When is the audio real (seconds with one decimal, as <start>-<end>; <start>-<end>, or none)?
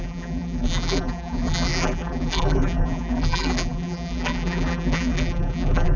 none